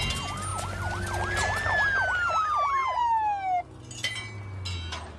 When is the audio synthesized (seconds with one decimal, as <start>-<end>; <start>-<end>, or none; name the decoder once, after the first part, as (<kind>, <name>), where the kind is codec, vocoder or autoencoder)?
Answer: none